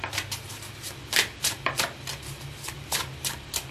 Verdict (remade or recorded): remade